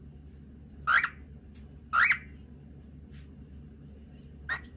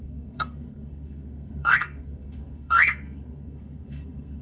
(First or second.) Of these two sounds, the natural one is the first